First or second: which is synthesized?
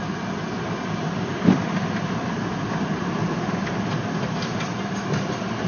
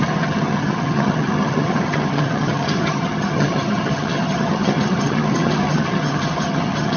second